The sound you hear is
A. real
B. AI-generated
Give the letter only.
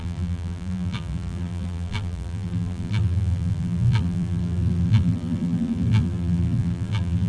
B